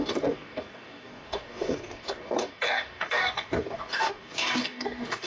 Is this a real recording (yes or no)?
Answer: no